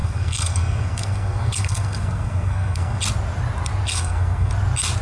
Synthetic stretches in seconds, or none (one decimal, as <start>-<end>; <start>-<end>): 0.0-3.0; 3.9-4.5